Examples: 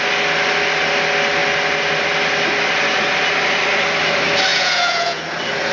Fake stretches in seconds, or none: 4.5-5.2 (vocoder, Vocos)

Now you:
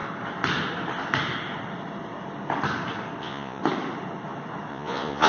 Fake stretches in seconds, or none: 3.2-3.6 (vocoder, Vocos); 4.7-5.3

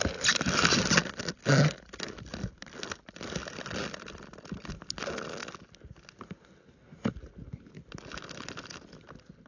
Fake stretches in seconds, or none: none

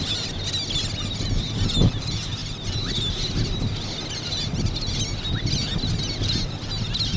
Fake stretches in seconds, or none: none

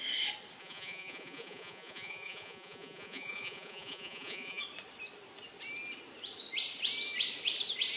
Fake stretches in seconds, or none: 0.6-4.6 (vocoder, Vocos)

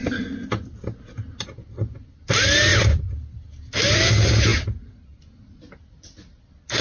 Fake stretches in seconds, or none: none